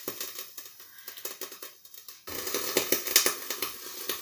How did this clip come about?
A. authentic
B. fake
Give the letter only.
A